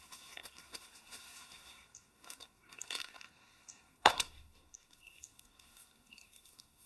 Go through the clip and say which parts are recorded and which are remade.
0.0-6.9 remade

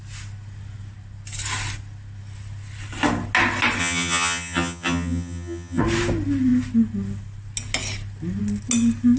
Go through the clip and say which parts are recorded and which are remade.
0.0-3.8 recorded; 3.8-5.8 remade; 5.8-9.2 recorded

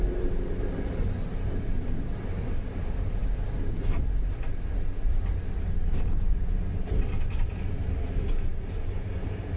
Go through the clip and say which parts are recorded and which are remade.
0.0-9.6 recorded

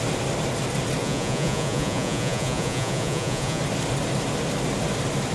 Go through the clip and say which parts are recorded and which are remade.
0.0-1.0 recorded; 1.0-3.6 remade; 3.6-5.3 recorded

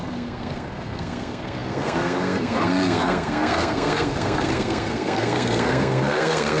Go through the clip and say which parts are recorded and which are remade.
0.0-6.6 remade